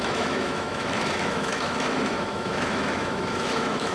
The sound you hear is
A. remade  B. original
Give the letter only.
A